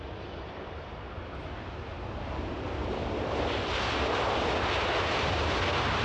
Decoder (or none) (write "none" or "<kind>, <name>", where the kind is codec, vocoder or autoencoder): none